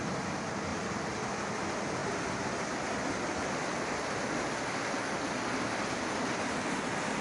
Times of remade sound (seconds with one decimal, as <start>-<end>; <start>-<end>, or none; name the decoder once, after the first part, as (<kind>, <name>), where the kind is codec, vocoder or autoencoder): none